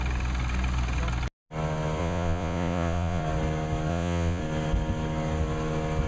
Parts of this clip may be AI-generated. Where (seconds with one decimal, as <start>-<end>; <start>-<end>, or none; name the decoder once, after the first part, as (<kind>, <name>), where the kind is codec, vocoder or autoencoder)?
2.0-3.2 (vocoder, Vocos); 3.9-4.4